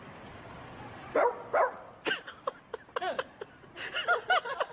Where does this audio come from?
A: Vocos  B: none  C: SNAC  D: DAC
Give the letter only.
B